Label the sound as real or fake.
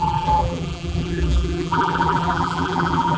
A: fake